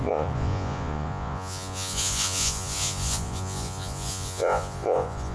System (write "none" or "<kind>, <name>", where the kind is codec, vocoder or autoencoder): vocoder, Vocos